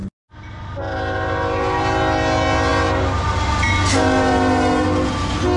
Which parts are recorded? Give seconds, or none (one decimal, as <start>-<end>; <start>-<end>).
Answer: 0.0-5.6